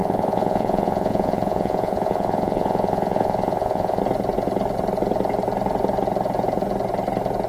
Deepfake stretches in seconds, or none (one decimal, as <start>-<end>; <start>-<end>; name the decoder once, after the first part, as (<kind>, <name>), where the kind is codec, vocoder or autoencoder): 0.0-4.0 (vocoder, Vocos)